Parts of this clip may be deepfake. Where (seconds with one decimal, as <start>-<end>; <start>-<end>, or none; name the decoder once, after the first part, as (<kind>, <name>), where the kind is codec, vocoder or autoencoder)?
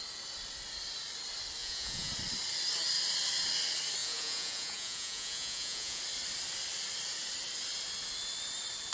1.6-2.1 (vocoder, Vocos); 4.0-6.0